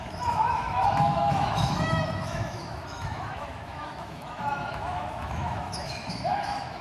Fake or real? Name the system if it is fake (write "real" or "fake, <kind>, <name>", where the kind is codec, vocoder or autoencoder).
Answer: fake, autoencoder, DAC-VAE